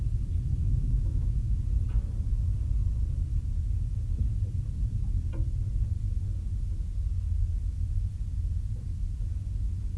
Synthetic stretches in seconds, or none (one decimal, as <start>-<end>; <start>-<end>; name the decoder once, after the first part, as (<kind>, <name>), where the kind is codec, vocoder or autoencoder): 0.6-1.6 (autoencoder, DAC-VAE)